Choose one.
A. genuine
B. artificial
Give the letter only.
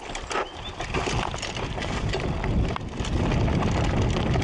A